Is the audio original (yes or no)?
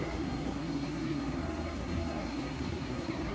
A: no